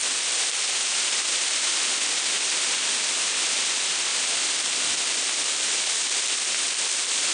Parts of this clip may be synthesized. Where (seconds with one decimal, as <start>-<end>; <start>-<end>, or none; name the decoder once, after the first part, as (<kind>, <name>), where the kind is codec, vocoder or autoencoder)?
none